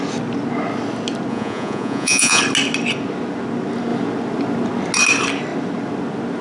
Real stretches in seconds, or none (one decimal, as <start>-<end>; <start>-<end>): 0.0-1.3; 2.4-6.4